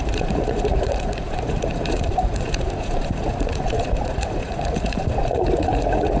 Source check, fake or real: fake